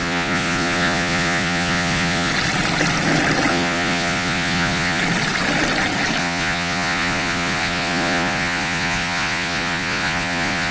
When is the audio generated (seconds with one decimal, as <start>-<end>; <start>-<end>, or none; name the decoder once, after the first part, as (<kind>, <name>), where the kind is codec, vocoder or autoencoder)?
0.0-2.3 (vocoder, Vocos); 3.5-5.0; 6.2-10.7